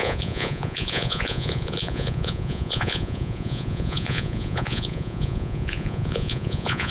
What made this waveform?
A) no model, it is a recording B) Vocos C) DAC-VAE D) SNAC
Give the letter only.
B